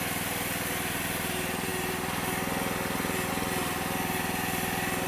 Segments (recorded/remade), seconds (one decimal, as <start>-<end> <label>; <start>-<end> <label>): 0.0-5.1 recorded